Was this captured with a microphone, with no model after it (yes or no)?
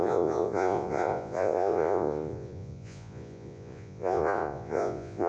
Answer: no